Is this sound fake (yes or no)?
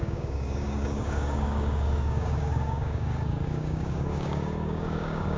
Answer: yes